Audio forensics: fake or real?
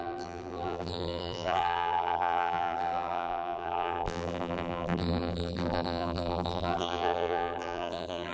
fake